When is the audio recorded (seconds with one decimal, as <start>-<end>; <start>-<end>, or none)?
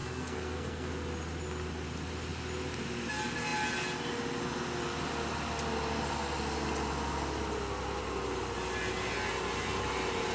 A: 0.9-10.3